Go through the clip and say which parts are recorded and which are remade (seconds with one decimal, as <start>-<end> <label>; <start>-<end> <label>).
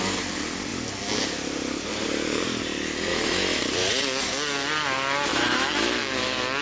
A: 0.0-3.1 recorded; 3.1-3.6 remade; 3.6-5.3 recorded; 5.3-6.1 remade; 6.1-6.6 recorded